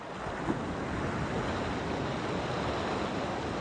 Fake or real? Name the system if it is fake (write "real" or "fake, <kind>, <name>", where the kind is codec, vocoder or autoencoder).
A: real